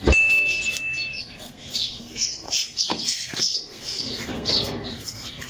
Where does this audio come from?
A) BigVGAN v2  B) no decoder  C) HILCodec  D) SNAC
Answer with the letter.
D